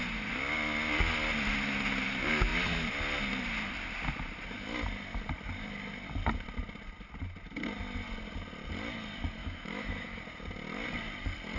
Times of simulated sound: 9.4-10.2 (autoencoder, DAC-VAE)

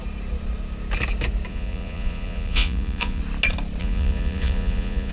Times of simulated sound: 1.5-3.2 (vocoder, Vocos); 3.8-5.1

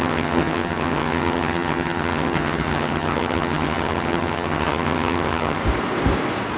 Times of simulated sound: 0.0-5.6 (vocoder, HiFi-GAN)

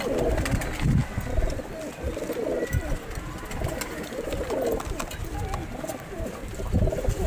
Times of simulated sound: none

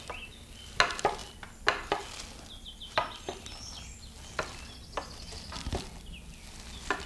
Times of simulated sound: none

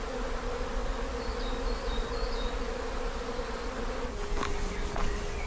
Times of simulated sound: none

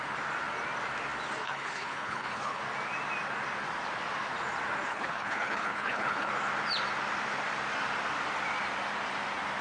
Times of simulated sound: 1.4-2.6 (codec, HILCodec); 4.9-6.3

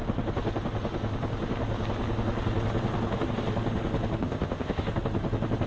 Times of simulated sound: 4.2-4.8 (codec, ZipCodec)